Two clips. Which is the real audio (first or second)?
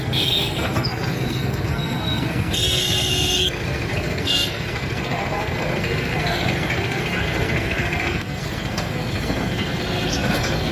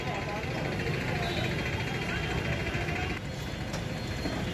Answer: second